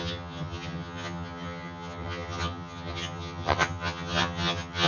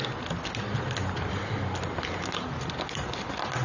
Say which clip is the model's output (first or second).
first